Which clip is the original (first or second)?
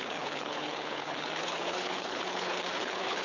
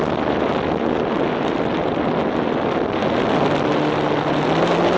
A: second